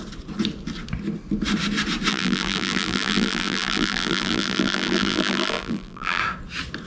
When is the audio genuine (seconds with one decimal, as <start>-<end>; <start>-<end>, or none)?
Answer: 0.0-2.1; 6.2-6.9